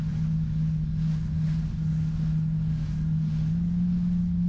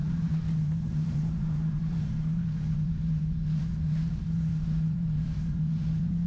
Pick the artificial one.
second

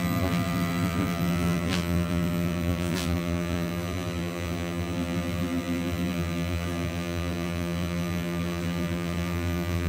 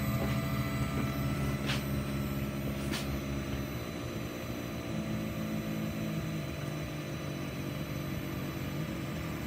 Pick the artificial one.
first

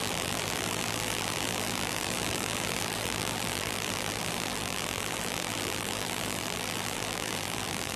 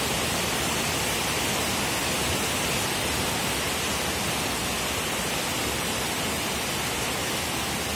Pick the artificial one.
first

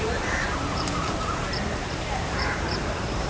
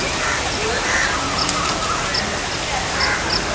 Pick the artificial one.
first